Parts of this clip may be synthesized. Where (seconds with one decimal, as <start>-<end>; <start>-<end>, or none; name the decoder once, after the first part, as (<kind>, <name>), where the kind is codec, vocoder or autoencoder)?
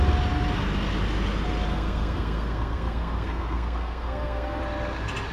1.7-4.6 (codec, SNAC)